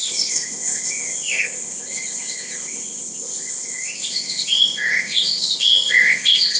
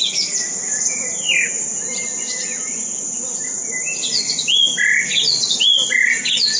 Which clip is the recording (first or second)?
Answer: second